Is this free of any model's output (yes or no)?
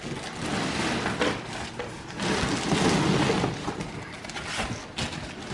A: yes